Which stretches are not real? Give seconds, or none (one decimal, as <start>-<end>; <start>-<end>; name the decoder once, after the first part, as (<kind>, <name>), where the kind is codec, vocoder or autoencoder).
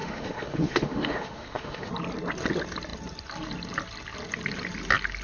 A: 0.0-1.9 (autoencoder, DAC-VAE)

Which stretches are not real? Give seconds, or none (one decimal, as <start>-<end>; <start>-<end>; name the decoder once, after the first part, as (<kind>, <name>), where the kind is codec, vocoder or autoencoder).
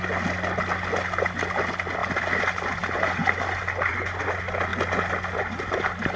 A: none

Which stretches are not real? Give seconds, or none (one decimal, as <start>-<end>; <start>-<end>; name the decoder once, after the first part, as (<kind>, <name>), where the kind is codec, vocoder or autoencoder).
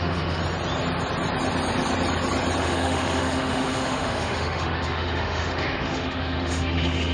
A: 0.0-0.4 (autoencoder, DAC-VAE); 2.6-7.1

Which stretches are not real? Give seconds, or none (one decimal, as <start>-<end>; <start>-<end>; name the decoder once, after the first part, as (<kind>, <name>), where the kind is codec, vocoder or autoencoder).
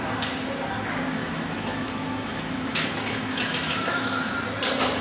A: 1.2-4.2 (autoencoder, DAC-VAE)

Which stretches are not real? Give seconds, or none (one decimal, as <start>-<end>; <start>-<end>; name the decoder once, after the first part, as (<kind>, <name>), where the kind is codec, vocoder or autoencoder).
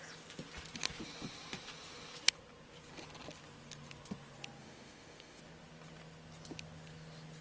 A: 4.6-5.4 (autoencoder, DAC-VAE)